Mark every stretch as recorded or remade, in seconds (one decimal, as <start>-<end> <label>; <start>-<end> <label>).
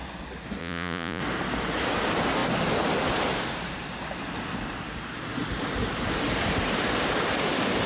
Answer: 0.0-0.6 recorded; 0.6-1.2 remade; 1.2-7.9 recorded